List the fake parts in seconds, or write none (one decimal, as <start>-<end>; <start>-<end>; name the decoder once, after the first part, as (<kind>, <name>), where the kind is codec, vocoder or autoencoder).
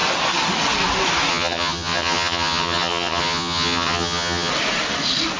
1.3-4.5 (vocoder, HiFi-GAN)